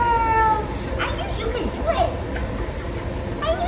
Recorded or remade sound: recorded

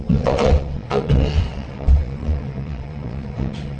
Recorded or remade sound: remade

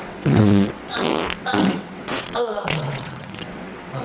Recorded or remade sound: remade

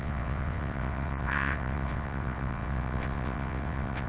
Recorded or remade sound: remade